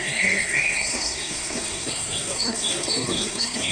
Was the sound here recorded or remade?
remade